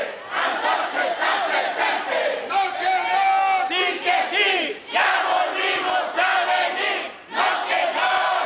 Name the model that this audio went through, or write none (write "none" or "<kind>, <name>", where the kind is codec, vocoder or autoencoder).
none